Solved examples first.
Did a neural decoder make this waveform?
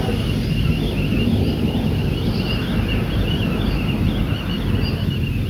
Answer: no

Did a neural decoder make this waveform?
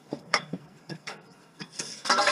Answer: yes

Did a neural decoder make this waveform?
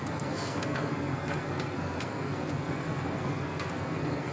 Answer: yes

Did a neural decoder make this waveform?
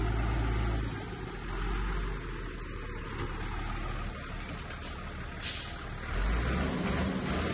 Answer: no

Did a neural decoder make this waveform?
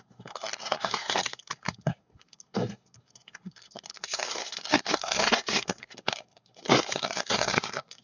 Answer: yes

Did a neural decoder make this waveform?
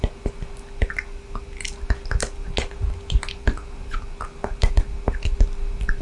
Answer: no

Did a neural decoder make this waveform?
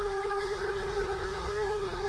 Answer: yes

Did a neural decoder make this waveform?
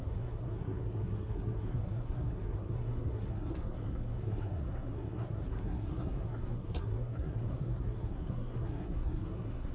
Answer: yes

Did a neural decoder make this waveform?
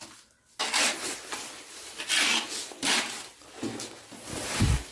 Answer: no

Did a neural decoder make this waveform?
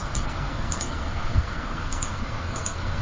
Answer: yes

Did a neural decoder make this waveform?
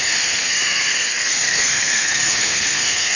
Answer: yes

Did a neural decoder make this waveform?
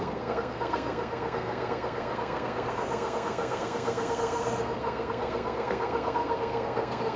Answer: yes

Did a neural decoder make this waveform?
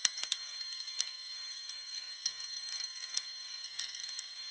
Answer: yes